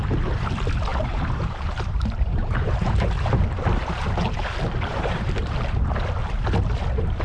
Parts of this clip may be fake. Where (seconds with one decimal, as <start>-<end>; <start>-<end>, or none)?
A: 0.9-3.3; 3.8-4.4; 4.9-5.8